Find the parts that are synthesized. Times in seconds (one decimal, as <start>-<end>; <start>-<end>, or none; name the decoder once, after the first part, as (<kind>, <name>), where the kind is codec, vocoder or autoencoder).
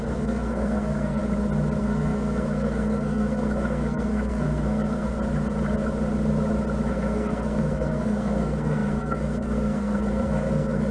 0.0-1.2 (codec, SNAC); 1.8-5.1; 6.9-10.9